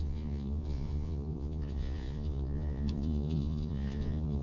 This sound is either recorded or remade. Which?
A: remade